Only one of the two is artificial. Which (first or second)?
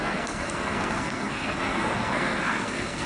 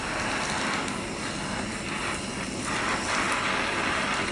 first